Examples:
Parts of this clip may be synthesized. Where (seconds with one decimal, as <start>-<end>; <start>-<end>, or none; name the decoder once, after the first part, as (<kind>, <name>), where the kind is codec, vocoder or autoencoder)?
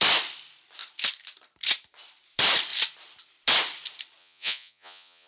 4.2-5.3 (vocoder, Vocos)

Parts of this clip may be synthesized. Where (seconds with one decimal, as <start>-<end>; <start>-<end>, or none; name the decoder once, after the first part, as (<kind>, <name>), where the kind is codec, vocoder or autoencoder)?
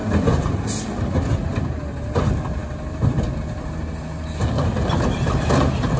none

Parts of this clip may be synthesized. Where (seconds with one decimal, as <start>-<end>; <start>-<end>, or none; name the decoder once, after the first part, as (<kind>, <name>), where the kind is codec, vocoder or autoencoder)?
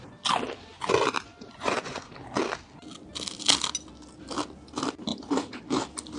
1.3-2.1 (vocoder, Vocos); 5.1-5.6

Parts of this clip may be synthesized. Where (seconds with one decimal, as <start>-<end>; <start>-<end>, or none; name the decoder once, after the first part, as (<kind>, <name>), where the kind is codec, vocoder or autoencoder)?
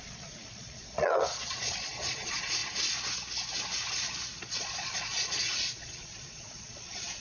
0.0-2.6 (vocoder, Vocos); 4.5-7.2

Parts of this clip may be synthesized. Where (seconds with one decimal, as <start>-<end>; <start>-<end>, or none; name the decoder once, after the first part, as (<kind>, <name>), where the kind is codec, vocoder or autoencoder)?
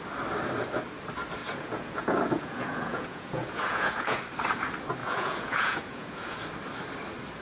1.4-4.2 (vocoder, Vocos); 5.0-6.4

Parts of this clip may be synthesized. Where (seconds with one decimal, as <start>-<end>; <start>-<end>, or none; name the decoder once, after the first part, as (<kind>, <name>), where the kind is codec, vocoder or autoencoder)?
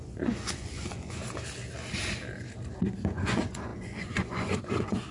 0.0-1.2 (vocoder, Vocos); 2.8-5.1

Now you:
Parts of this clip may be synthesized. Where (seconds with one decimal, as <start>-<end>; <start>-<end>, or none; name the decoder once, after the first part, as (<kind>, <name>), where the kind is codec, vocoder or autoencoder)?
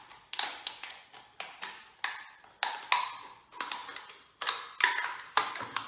0.5-1.1 (vocoder, Vocos)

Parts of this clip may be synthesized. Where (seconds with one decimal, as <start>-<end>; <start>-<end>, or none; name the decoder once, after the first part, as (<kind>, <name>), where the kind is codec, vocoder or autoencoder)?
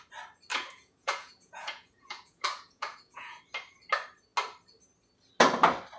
0.5-3.4 (vocoder, Vocos)